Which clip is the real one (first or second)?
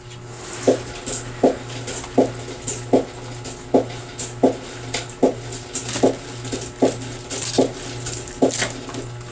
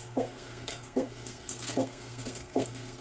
first